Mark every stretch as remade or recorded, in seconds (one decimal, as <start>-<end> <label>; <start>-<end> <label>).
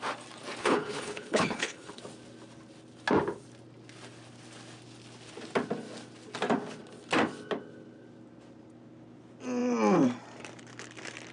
0.0-0.6 recorded; 0.6-2.0 remade; 2.0-11.3 recorded